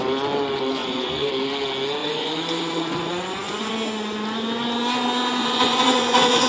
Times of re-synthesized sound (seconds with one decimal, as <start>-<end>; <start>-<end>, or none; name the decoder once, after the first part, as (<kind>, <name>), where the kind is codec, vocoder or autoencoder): 0.8-1.3 (vocoder, Vocos); 2.0-3.7; 5.4-6.5